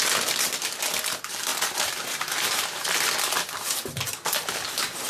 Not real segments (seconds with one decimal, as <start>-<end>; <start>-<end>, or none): 1.5-3.2